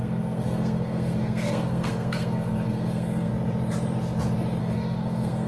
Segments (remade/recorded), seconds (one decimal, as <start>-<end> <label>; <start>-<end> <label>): 0.0-3.3 remade; 3.3-4.6 recorded; 4.6-5.5 remade